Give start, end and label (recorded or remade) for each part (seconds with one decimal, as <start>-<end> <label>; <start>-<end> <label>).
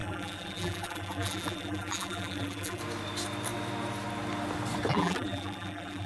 0.0-2.8 remade; 2.8-4.9 recorded; 4.9-6.1 remade